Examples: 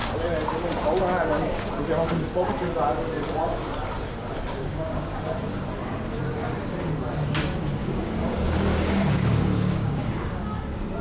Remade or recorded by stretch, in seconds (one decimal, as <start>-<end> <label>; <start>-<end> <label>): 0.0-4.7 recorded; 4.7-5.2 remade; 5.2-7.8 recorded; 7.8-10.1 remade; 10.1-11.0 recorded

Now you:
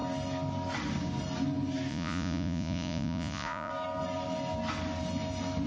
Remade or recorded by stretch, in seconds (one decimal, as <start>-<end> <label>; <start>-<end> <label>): 0.0-1.9 recorded; 1.9-3.7 remade; 3.7-5.7 recorded

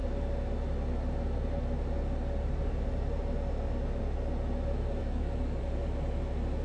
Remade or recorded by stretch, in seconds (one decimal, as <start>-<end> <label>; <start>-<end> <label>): 0.0-5.0 recorded; 5.0-5.6 remade; 5.6-6.6 recorded

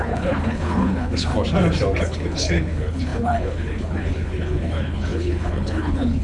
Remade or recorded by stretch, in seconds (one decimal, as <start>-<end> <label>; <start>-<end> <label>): 0.0-1.3 remade; 1.3-2.0 recorded; 2.0-6.2 remade

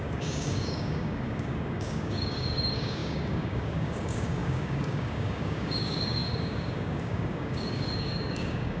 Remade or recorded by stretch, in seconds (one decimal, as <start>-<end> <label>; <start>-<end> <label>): 0.0-8.8 remade

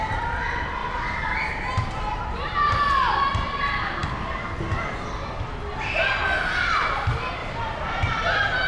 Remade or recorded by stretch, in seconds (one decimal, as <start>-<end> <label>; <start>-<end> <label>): 0.0-0.8 recorded; 0.8-1.4 remade; 1.4-7.4 recorded; 7.4-8.7 remade